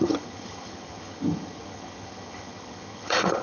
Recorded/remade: remade